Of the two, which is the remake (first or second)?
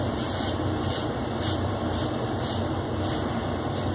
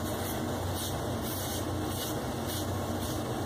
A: first